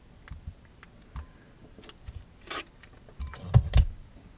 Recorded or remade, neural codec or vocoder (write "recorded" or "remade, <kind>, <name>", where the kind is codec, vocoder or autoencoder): recorded